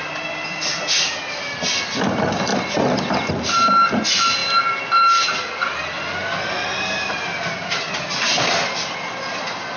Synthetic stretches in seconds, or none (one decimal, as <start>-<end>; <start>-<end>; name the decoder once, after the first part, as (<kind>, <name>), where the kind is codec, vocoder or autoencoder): 4.4-5.7 (vocoder, BigVGAN v2)